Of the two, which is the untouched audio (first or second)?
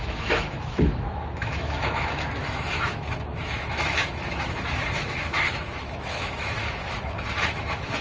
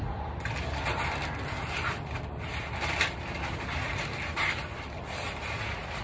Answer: second